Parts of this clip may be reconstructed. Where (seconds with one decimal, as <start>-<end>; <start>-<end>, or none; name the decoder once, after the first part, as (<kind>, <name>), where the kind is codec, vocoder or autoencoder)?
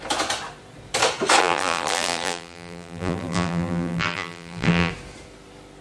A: 1.4-4.9 (vocoder, BigVGAN v2)